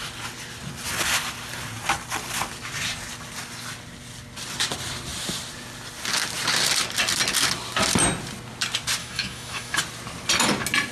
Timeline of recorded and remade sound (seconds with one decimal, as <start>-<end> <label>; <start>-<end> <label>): 0.0-9.0 recorded; 9.0-9.8 remade; 9.8-10.9 recorded